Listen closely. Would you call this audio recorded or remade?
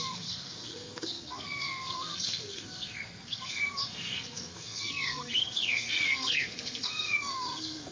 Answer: remade